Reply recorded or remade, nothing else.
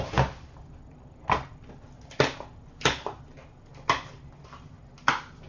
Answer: recorded